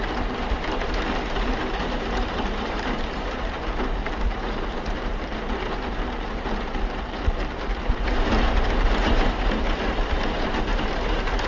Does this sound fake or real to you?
fake